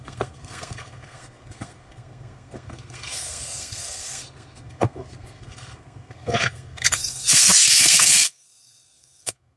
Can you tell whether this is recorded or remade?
remade